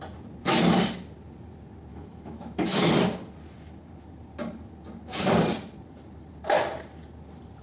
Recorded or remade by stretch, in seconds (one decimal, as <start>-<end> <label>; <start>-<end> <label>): 0.0-1.9 recorded; 1.9-2.9 remade; 2.9-7.6 recorded